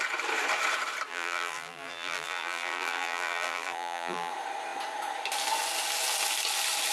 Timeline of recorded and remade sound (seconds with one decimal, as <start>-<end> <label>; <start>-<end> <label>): 0.0-1.1 recorded; 1.1-4.3 remade; 4.3-6.9 recorded